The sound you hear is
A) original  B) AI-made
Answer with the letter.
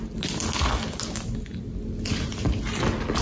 A